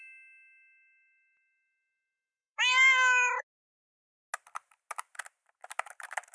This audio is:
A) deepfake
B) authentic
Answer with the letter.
B